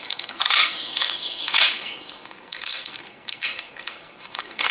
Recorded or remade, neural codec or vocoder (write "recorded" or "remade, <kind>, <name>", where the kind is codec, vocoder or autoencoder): remade, codec, SNAC